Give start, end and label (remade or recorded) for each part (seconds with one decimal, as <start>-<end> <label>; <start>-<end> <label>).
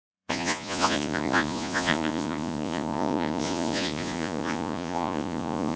0.0-5.8 remade